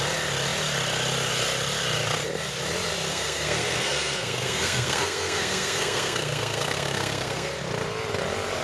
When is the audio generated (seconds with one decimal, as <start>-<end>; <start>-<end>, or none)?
3.1-7.5